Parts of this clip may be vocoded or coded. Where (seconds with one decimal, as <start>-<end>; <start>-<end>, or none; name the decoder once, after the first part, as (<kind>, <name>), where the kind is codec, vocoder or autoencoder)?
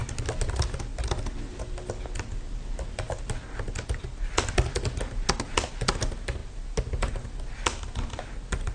none